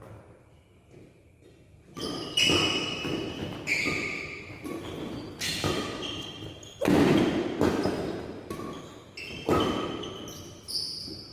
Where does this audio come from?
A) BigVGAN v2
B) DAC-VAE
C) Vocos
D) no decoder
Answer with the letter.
D